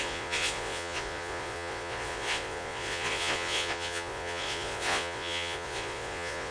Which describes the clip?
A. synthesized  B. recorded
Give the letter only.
A